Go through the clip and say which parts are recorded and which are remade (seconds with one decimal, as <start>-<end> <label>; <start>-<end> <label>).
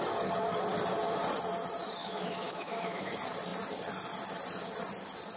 0.0-2.0 recorded; 2.0-3.1 remade; 3.1-5.4 recorded